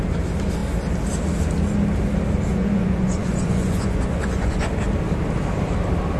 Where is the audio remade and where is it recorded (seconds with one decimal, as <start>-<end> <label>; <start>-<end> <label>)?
0.0-2.5 recorded; 2.5-4.7 remade; 4.7-6.2 recorded